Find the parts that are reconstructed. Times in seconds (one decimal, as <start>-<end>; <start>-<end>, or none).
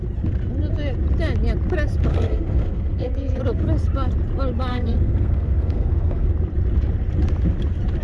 2.1-3.4; 4.7-6.3